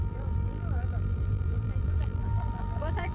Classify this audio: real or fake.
fake